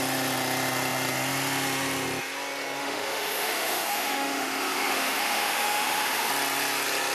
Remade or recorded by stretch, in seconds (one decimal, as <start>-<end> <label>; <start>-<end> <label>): 0.0-2.8 recorded; 2.8-6.3 remade; 6.3-7.1 recorded